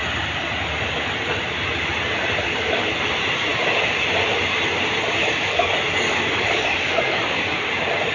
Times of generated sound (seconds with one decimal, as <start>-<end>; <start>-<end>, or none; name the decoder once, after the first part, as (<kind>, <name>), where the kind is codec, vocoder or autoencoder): 5.5-7.6 (codec, DAC)